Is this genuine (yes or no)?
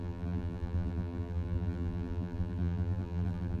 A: no